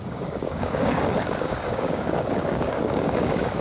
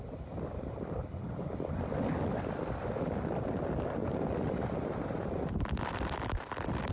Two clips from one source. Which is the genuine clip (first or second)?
second